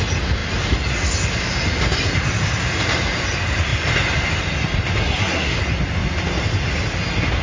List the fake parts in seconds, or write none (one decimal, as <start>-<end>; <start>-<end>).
5.0-5.6